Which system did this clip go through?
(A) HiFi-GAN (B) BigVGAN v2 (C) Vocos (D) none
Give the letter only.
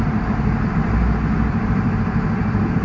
B